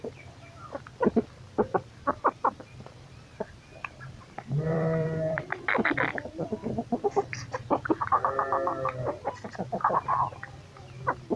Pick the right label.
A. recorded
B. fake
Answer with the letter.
B